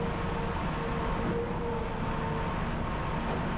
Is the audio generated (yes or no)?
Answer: no